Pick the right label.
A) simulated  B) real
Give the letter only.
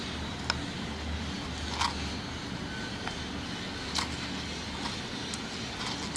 B